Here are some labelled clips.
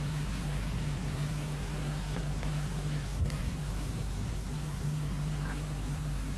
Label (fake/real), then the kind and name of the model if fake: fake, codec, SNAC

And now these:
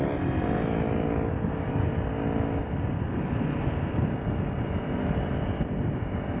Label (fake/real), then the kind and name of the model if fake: real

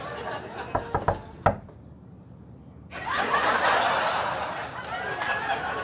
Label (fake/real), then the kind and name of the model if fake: real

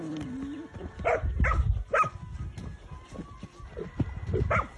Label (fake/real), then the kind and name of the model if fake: real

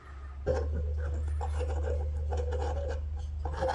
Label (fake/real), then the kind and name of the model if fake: real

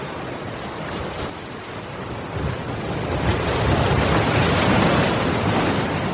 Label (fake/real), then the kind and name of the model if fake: real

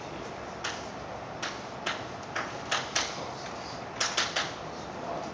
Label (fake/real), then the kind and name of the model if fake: real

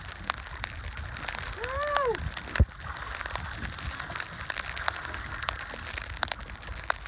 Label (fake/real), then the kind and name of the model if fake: real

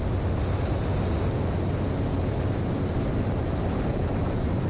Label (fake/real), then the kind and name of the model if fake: real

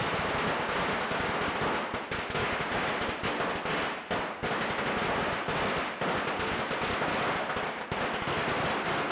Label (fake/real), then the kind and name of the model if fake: real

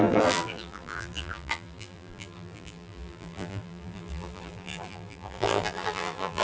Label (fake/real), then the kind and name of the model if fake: fake, vocoder, BigVGAN v2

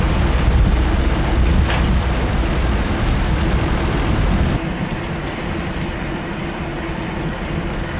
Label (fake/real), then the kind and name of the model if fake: real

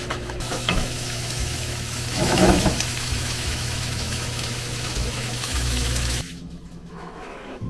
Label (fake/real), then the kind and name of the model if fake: fake, autoencoder, DAC-VAE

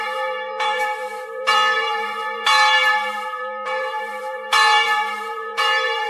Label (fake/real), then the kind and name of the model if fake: fake, vocoder, BigVGAN v2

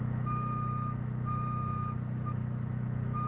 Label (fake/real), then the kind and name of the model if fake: fake, autoencoder, DAC-VAE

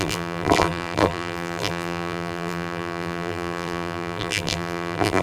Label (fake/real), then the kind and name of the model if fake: fake, vocoder, BigVGAN v2